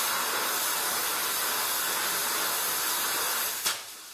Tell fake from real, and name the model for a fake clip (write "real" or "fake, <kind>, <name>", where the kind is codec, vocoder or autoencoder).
real